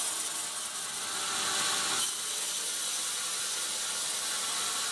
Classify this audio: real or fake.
real